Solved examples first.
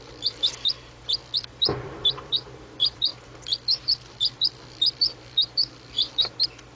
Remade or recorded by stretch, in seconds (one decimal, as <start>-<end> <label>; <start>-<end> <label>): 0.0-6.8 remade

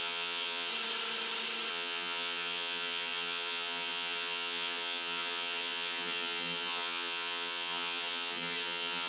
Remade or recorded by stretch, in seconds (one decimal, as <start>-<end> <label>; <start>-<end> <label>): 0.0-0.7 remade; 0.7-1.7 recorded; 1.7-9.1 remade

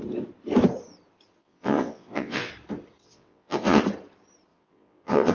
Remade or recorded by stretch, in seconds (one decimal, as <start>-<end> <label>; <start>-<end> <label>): 0.0-1.4 recorded; 1.4-2.5 remade; 2.5-3.0 recorded; 3.0-3.8 remade; 3.8-4.5 recorded; 4.5-5.3 remade

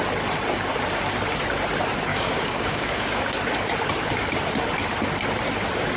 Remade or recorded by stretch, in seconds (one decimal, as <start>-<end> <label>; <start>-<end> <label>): 0.0-2.1 recorded; 2.1-3.2 remade; 3.2-6.0 recorded

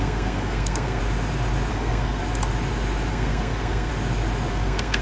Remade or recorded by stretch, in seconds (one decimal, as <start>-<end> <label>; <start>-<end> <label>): 0.0-1.0 remade; 1.0-1.7 recorded; 1.7-2.2 remade; 2.2-3.1 recorded; 3.1-3.9 remade; 3.9-4.5 recorded; 4.5-5.0 remade

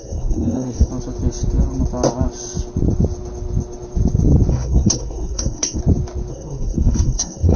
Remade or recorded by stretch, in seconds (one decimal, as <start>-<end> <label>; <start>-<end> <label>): 0.0-0.9 remade; 0.9-4.5 recorded; 4.5-5.8 remade; 5.8-6.3 recorded; 6.3-7.6 remade